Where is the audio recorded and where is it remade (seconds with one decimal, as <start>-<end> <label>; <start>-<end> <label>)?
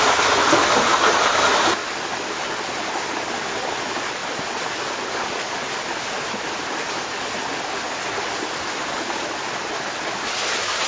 0.0-10.9 recorded